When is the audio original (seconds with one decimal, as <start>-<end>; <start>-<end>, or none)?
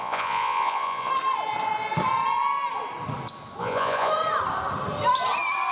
1.1-3.6; 4.1-5.7